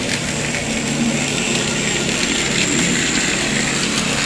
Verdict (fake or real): real